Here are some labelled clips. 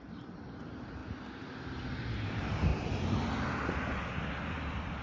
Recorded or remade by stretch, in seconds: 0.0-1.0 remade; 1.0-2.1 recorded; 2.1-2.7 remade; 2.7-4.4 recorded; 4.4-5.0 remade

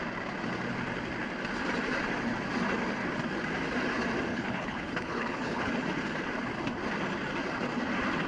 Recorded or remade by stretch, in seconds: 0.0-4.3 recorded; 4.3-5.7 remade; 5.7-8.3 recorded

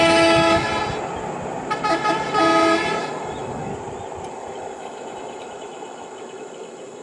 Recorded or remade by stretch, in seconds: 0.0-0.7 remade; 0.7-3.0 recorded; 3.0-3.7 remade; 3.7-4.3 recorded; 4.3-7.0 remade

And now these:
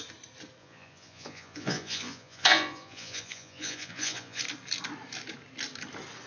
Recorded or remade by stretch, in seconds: 0.0-0.6 recorded; 0.6-4.4 remade; 4.4-6.3 recorded